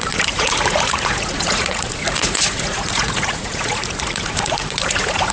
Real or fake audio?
fake